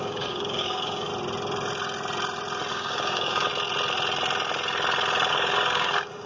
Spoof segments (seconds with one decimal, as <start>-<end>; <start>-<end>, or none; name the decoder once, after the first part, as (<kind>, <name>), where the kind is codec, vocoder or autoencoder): 0.0-1.1 (codec, DAC); 2.7-3.5; 5.3-6.3